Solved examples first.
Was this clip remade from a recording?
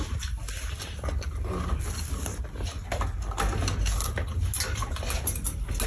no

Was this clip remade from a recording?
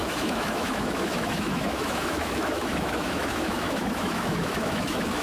yes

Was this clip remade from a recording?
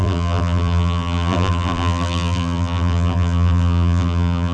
yes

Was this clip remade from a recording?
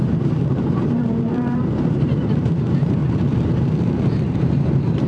yes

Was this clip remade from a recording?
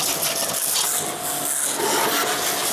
no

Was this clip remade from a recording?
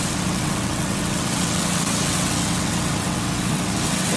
yes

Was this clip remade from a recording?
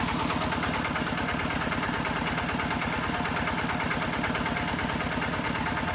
no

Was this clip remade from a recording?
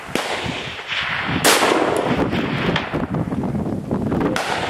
no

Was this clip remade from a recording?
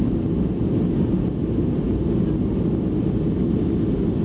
no